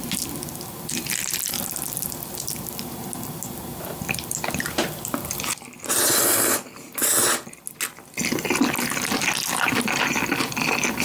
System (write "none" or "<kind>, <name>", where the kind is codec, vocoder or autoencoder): none